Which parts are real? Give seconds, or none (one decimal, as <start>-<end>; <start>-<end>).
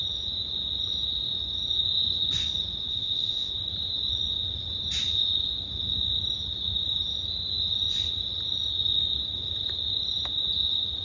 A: 0.0-2.9; 3.5-11.0